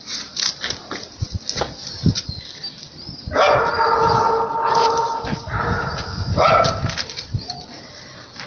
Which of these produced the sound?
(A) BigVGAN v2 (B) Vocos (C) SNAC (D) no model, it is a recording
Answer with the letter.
D